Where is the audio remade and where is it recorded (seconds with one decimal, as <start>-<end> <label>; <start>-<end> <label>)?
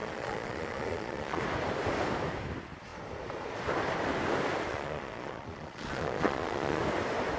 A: 0.0-1.4 remade; 1.4-4.7 recorded; 4.7-6.8 remade; 6.8-7.4 recorded